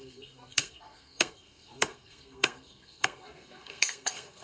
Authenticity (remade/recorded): remade